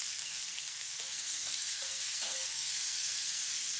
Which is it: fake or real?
fake